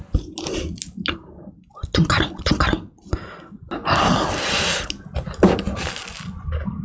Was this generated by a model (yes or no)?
no